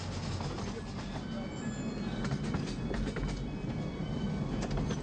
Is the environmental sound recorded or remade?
recorded